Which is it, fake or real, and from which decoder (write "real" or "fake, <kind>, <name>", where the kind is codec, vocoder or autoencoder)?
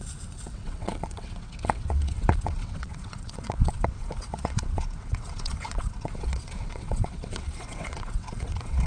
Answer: fake, vocoder, WaveNeXt